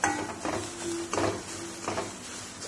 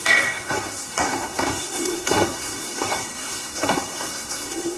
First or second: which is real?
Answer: first